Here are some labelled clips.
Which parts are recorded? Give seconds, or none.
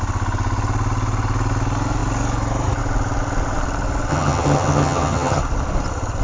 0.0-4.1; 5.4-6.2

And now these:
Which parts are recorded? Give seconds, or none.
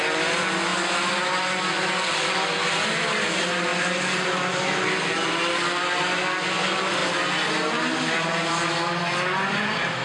0.0-10.0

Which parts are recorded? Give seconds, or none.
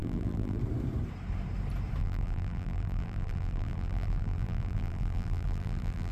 0.6-2.0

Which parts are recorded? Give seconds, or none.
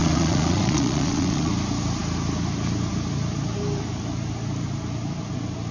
1.5-5.7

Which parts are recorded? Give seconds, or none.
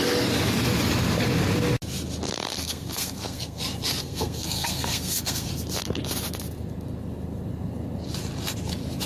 0.0-2.6; 3.6-4.0; 5.5-9.1